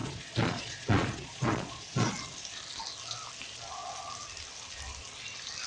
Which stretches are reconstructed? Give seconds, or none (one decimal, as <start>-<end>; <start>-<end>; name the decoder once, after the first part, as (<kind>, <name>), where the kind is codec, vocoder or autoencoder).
0.0-2.1 (vocoder, Vocos)